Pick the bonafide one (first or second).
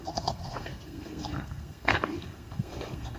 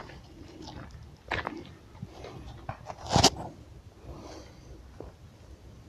second